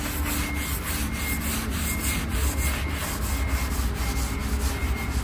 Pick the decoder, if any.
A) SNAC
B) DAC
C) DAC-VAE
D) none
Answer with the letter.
D